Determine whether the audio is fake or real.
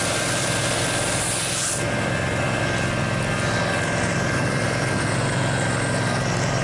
real